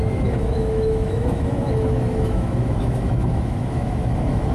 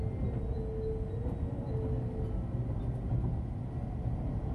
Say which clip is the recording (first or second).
second